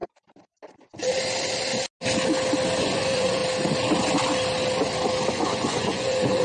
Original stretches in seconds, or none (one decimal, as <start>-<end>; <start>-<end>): 0.0-2.8; 3.4-5.3